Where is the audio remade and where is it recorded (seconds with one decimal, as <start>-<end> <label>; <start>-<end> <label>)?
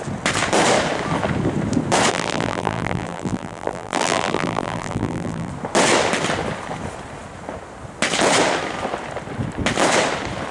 0.0-2.1 recorded; 2.1-5.5 remade; 5.5-10.5 recorded